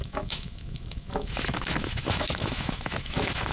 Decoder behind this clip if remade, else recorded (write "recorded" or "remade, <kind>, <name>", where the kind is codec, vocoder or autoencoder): remade, autoencoder, DAC-VAE